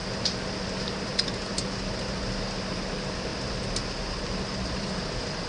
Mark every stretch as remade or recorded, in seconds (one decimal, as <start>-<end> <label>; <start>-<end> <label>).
0.0-3.3 recorded; 3.3-5.5 remade